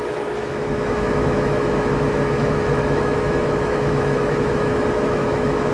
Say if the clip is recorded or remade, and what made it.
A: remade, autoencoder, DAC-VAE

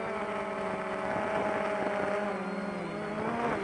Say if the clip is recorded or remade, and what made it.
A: recorded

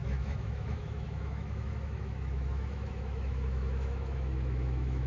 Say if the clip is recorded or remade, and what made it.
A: remade, autoencoder, DAC-VAE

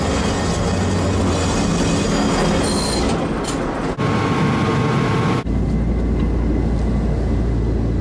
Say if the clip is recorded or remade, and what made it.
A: recorded